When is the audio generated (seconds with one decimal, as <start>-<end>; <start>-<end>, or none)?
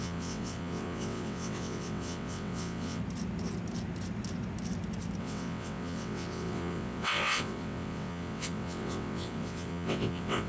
0.0-3.0; 5.2-10.5